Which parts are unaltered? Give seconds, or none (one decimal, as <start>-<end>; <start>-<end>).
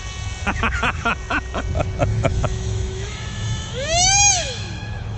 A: 0.0-2.1